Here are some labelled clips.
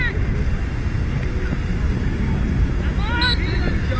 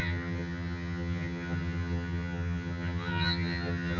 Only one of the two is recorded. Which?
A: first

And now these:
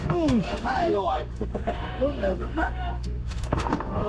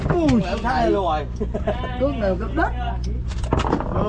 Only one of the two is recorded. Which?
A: second